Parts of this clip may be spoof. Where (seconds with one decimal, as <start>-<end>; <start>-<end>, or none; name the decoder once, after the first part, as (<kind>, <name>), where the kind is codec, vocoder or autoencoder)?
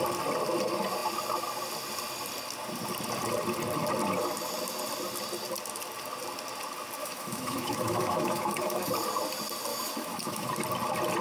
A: 7.0-8.9 (autoencoder, DAC-VAE); 9.7-10.5